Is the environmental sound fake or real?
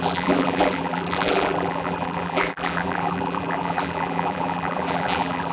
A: fake